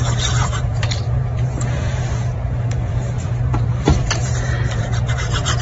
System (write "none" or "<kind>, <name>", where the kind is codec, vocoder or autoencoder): vocoder, BigVGAN v2